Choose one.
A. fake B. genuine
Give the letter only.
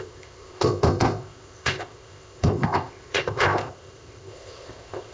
A